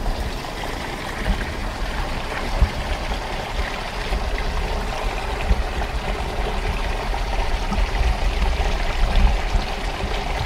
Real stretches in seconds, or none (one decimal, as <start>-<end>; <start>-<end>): 0.0-1.6; 2.8-10.5